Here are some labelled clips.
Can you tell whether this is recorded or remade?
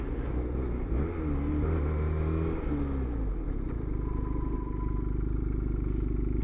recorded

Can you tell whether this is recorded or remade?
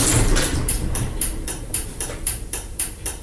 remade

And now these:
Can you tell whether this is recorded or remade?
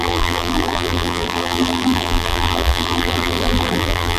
remade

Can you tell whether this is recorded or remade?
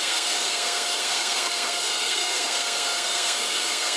remade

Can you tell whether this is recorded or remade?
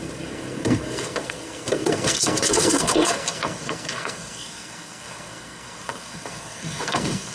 remade